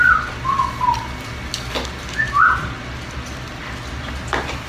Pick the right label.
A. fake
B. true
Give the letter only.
B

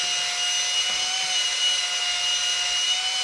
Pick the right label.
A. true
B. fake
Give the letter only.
A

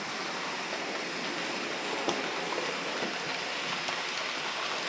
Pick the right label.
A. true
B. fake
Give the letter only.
A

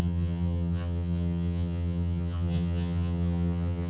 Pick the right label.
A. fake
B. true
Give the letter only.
A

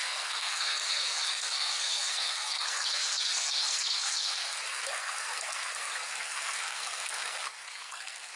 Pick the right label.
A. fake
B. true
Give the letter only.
A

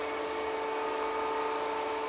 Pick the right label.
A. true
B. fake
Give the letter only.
A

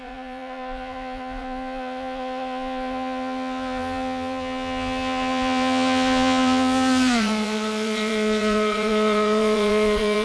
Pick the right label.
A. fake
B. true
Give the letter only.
A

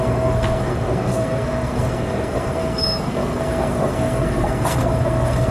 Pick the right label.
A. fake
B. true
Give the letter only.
A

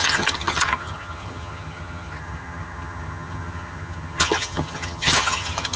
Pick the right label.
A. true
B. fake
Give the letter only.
B